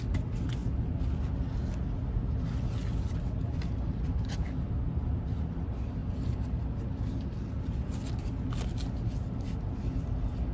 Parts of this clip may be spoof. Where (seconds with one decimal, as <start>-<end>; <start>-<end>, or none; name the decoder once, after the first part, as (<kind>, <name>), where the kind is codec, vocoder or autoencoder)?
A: none